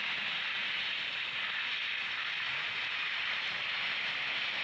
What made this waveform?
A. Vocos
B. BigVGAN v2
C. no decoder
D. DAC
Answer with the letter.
B